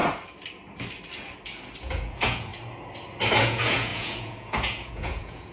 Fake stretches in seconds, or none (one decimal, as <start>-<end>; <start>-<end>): 1.8-2.5; 3.4-5.5